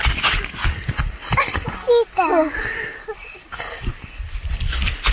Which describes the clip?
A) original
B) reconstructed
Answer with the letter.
A